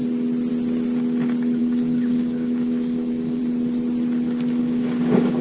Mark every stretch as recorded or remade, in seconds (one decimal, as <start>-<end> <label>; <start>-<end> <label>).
0.0-1.6 recorded; 1.6-3.4 remade; 3.4-4.6 recorded; 4.6-5.4 remade